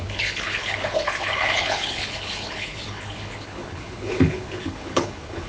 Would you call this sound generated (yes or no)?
yes